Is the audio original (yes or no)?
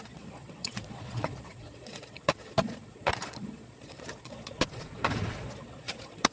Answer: no